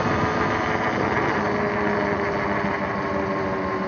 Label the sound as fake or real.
real